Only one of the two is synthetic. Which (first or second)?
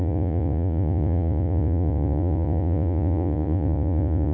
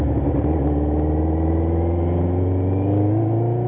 first